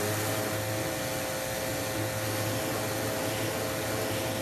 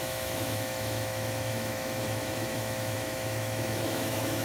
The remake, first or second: second